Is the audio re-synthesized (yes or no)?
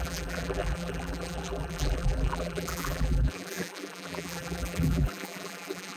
yes